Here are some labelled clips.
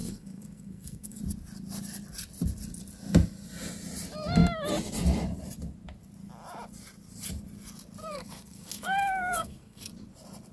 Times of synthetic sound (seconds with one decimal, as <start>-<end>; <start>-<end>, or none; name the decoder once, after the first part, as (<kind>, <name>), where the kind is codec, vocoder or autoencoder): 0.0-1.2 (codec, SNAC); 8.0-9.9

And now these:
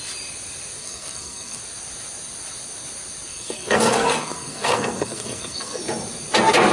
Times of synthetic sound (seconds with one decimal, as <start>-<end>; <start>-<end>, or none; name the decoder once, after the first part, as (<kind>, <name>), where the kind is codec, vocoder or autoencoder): 0.8-1.6 (codec, SNAC); 3.3-5.8

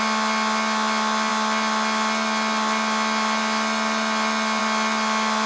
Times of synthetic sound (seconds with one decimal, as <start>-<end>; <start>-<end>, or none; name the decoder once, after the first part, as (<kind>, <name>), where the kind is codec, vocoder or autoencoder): none